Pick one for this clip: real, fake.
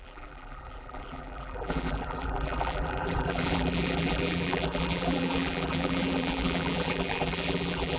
fake